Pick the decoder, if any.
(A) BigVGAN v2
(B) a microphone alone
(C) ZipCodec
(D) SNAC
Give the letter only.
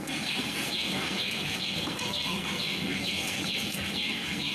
D